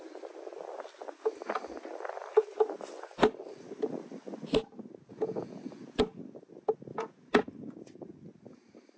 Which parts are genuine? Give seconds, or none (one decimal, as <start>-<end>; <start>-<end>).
0.0-5.1; 6.0-6.9; 7.4-9.0